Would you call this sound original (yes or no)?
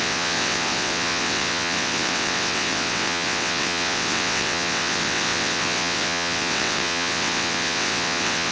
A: no